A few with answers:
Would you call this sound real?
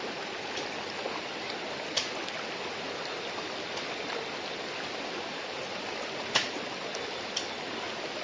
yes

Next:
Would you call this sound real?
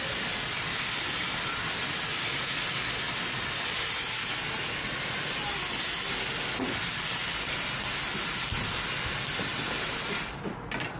yes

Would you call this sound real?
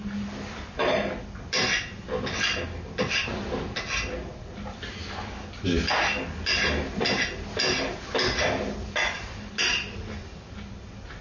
yes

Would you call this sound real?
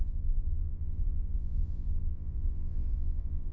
no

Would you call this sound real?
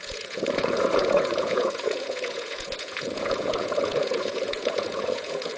no